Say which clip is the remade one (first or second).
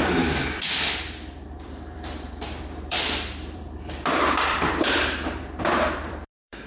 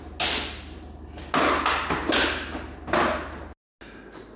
first